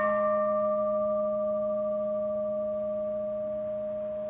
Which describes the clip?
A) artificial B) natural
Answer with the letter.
B